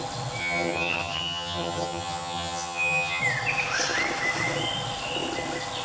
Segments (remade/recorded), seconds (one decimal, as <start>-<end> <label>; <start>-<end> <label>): 0.0-0.4 recorded; 0.4-3.2 remade; 3.2-5.8 recorded